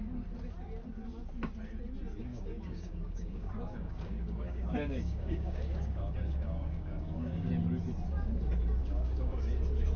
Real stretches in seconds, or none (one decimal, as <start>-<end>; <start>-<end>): 0.0-2.3; 7.5-8.8; 9.5-10.0